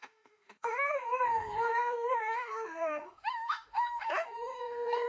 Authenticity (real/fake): fake